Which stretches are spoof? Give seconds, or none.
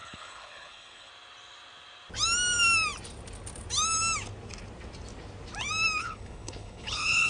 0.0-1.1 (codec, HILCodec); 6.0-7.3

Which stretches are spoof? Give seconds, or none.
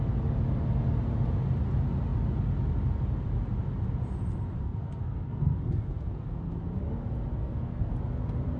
4.6-6.6 (codec, SNAC); 7.4-7.9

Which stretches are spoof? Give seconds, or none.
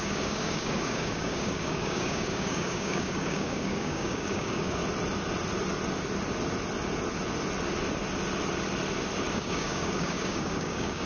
0.0-4.8 (codec, DAC); 9.3-11.1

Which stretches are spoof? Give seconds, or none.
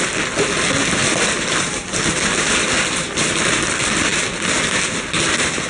1.0-2.5 (vocoder, BigVGAN v2)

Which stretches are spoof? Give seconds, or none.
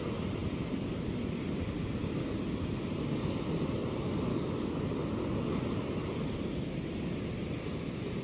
4.3-4.8 (codec, DAC)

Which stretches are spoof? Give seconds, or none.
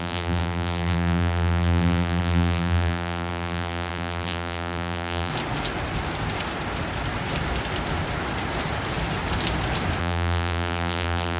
0.0-5.3 (vocoder, BigVGAN v2); 10.0-11.4